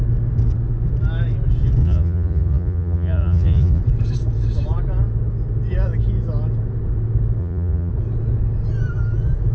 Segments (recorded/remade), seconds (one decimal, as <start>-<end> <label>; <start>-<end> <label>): 0.0-1.8 recorded; 1.8-3.8 remade; 3.8-7.4 recorded; 7.4-7.9 remade; 7.9-9.5 recorded